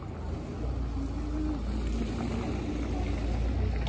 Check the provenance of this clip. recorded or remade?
recorded